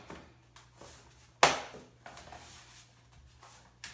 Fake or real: real